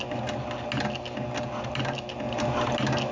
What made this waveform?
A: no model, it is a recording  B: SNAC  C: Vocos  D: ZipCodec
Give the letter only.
A